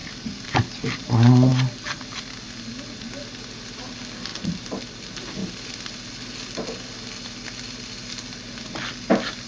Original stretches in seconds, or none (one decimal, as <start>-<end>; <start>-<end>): 0.6-5.4; 6.1-9.5

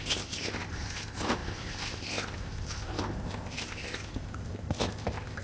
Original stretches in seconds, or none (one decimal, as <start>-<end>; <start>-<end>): none

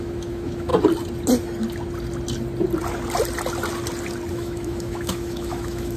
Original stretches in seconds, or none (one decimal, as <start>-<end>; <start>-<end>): 0.7-4.3

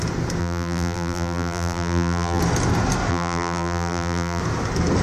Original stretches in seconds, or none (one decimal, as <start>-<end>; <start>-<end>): 0.0-0.4; 2.4-3.1; 4.4-5.0